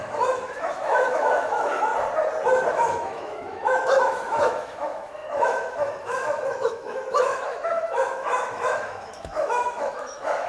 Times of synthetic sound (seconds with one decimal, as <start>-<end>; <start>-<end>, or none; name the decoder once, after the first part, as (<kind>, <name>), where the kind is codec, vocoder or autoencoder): 0.0-1.9 (autoencoder, DAC-VAE); 2.7-10.5